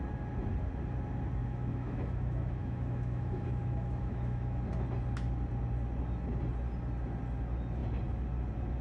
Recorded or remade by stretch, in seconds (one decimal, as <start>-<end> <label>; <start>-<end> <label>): 0.0-1.4 recorded; 1.4-4.6 remade; 4.6-8.8 recorded